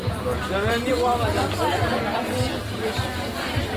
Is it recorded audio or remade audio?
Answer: remade